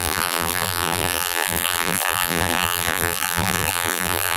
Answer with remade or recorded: remade